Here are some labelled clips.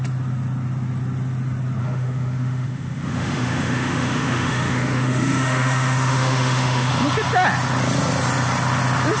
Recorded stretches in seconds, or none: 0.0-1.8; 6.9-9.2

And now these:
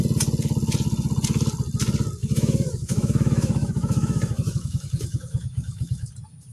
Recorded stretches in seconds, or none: 0.0-2.2; 6.1-6.5

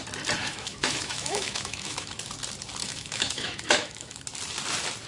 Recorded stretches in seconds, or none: 0.0-0.4; 2.1-2.8; 4.2-5.1

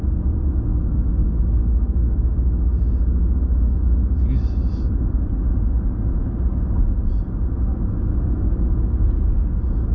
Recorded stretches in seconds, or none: 0.0-0.7; 4.2-7.7; 9.0-9.9

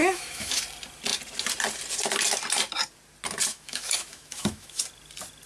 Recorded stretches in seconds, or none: 0.6-3.5; 4.8-5.5

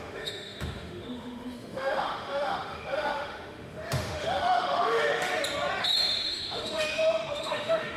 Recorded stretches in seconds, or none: 5.3-5.8

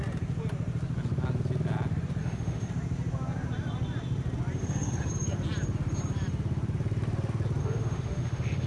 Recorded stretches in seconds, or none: 0.0-2.2; 2.7-4.6; 5.1-7.6